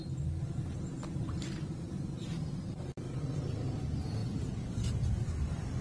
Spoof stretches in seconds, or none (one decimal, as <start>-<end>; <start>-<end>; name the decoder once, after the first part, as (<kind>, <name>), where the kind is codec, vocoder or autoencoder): 2.2-3.8 (vocoder, BigVGAN v2); 4.2-5.8